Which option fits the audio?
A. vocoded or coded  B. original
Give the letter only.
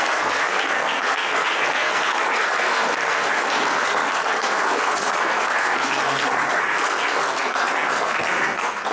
A